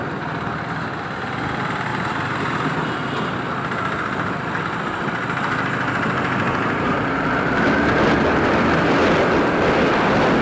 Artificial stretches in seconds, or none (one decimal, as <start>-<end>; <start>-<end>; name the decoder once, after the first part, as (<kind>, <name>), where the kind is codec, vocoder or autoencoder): none